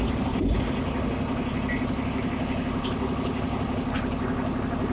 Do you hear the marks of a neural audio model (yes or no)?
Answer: no